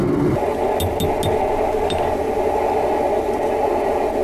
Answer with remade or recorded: recorded